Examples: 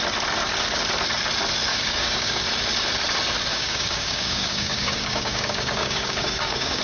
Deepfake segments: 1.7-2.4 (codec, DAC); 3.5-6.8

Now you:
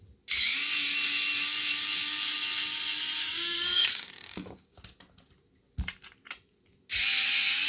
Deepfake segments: 3.2-4.8 (codec, DAC)